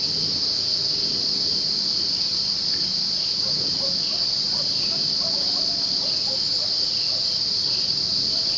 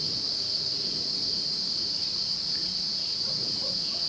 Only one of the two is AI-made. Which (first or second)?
second